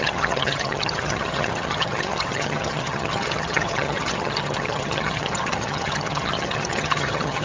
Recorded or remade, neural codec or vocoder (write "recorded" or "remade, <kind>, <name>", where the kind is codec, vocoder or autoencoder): remade, vocoder, HiFi-GAN